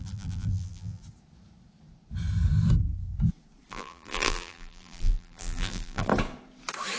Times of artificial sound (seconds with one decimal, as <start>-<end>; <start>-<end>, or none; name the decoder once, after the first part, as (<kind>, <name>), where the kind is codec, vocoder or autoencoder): 0.0-1.0 (vocoder, BigVGAN v2); 3.7-6.1